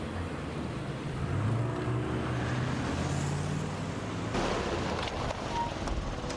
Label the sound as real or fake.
real